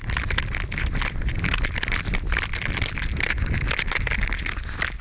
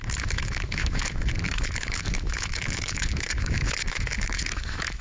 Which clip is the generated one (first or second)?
second